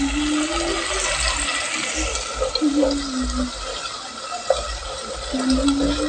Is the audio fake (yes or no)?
no